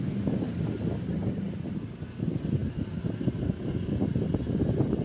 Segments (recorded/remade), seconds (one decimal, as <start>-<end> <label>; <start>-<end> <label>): 0.0-1.2 recorded; 1.2-2.0 remade; 2.0-5.0 recorded